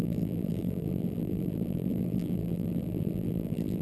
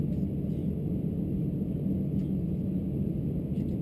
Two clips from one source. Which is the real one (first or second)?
second